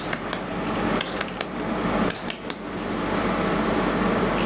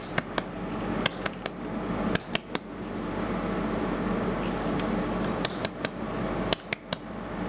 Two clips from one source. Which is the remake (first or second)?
first